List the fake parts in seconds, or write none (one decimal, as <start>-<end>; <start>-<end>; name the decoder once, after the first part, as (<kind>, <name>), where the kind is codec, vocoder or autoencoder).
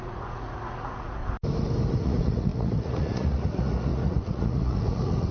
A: 0.0-1.2 (vocoder, Vocos); 1.9-5.3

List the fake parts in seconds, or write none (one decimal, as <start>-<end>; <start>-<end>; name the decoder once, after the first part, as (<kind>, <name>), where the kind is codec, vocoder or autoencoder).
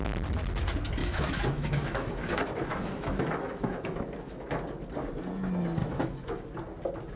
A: 1.0-2.3 (autoencoder, DAC-VAE); 2.7-4.6; 5.8-6.4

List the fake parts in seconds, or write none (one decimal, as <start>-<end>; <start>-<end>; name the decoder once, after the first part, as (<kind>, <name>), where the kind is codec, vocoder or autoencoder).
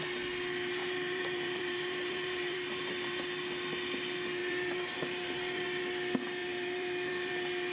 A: 0.8-3.2 (vocoder, BigVGAN v2); 4.4-5.8; 6.4-7.3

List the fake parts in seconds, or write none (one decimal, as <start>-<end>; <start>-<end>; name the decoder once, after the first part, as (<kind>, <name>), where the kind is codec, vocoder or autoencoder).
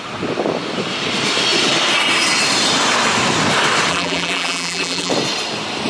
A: 3.9-5.1 (vocoder, BigVGAN v2)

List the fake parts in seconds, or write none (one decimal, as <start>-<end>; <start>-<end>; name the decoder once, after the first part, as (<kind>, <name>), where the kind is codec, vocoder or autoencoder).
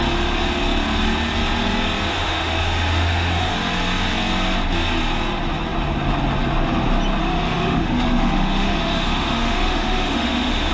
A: 2.1-3.5 (autoencoder, DAC-VAE); 7.2-10.7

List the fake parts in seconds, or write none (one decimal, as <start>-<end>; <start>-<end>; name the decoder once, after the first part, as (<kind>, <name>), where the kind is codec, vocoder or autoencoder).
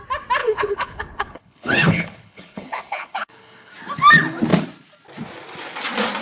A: 0.4-3.7 (codec, HILCodec)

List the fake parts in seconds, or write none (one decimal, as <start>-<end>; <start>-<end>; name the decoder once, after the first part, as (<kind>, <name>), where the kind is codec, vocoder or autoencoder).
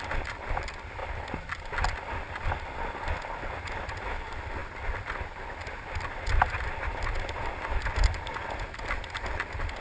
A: none